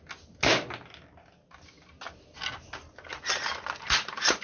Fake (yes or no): no